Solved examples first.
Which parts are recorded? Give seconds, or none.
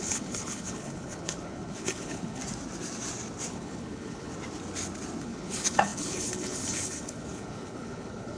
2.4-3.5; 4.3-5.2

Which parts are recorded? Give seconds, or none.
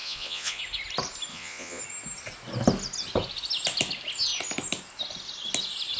0.6-1.3; 1.8-6.0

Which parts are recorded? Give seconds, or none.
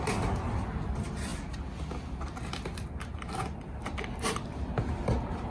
0.0-5.5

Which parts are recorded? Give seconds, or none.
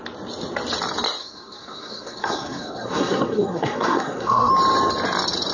0.0-1.2; 4.5-5.5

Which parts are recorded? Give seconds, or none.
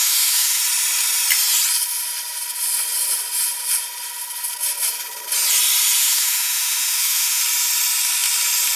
0.6-6.0; 7.4-8.8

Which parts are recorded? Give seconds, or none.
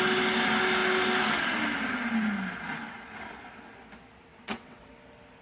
0.0-4.3; 4.9-5.4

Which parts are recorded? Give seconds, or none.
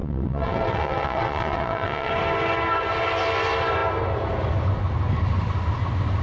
2.1-6.2